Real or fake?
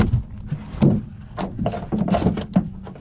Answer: real